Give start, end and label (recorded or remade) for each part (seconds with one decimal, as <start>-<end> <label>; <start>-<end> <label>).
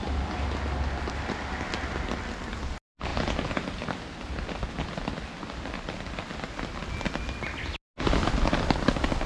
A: 0.0-9.3 recorded